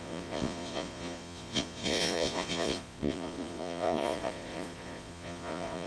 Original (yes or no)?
no